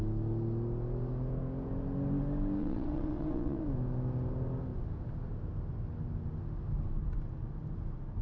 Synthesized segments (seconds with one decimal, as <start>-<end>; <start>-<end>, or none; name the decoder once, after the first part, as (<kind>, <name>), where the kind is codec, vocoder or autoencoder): 2.6-3.6 (vocoder, WaveNeXt)